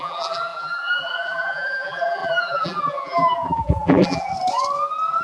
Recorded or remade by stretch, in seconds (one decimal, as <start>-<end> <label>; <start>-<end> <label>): 0.0-4.3 remade; 4.3-5.2 recorded